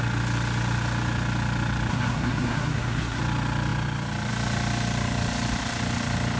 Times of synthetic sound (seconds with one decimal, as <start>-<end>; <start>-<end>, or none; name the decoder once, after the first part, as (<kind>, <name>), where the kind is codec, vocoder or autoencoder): 1.9-3.2 (codec, SNAC)